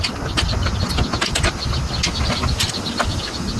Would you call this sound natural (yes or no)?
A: yes